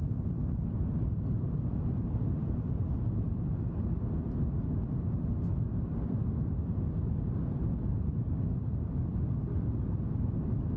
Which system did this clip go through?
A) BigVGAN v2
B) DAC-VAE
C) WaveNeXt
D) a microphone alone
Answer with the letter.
D